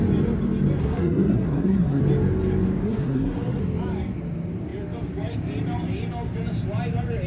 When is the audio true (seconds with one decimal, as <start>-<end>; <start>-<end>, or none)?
0.0-0.8; 2.0-2.8; 3.6-7.3